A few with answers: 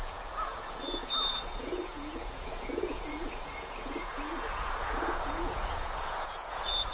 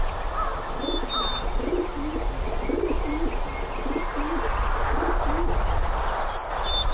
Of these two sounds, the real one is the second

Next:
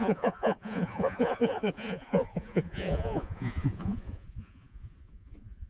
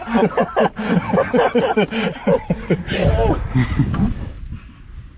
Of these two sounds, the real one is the second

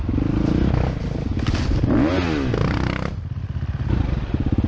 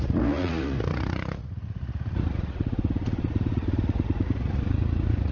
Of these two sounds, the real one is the first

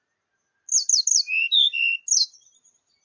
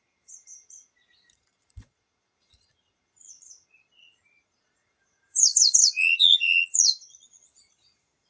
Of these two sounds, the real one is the first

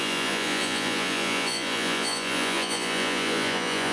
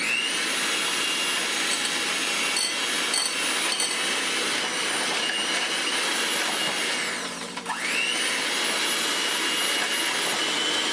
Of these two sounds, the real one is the second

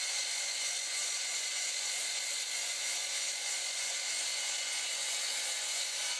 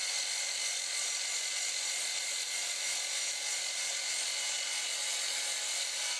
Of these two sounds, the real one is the second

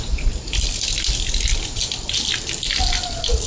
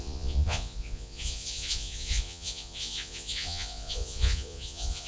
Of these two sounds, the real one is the first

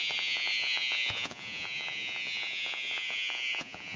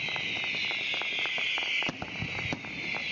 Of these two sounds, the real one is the second